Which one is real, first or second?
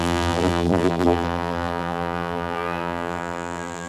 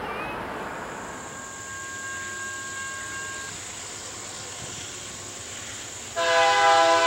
second